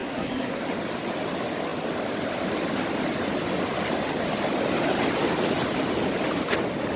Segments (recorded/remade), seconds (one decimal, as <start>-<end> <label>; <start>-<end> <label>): 0.0-0.6 remade; 0.6-7.0 recorded